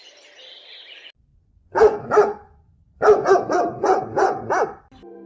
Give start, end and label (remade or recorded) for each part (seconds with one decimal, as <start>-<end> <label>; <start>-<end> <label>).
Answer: 0.0-1.3 recorded; 1.3-4.5 remade; 4.5-5.3 recorded